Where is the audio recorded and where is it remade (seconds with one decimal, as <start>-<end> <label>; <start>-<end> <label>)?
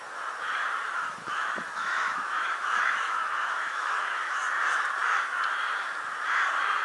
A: 0.0-0.8 recorded; 0.8-4.4 remade; 4.4-6.8 recorded